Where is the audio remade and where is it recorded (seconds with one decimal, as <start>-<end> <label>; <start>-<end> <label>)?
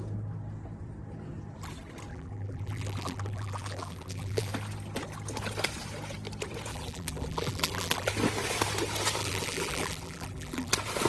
0.0-2.1 recorded; 2.1-4.5 remade; 4.5-6.7 recorded; 6.7-8.1 remade; 8.1-9.2 recorded; 9.2-10.7 remade; 10.7-11.1 recorded